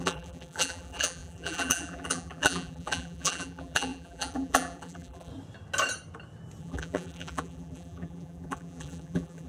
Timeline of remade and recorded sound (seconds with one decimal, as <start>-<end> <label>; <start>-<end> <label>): 0.0-5.3 remade; 5.3-6.6 recorded; 6.6-9.5 remade